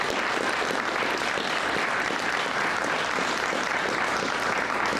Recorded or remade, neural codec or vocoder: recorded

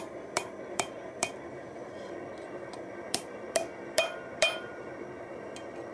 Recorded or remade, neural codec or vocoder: remade, vocoder, BigVGAN v2